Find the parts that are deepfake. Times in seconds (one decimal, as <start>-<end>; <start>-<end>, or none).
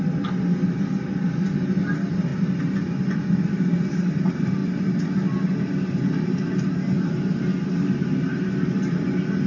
none